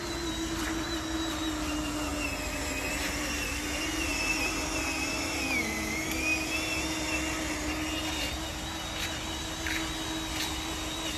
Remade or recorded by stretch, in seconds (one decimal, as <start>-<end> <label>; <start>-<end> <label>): 0.0-11.2 recorded